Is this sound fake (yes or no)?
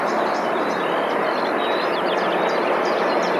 no